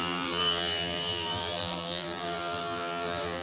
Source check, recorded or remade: remade